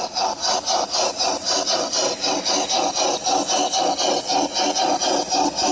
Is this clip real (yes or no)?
yes